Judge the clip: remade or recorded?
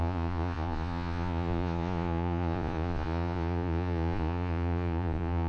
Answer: remade